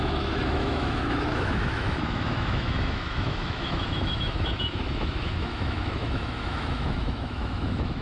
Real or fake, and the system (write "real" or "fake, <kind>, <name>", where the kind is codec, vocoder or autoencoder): fake, autoencoder, DAC-VAE